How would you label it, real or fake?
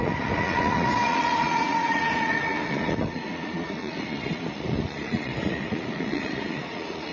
fake